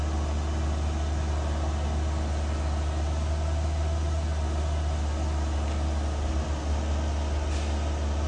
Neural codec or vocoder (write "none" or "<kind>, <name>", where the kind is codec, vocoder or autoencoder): none